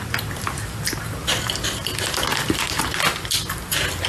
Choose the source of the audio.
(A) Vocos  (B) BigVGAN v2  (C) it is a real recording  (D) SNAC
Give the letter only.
C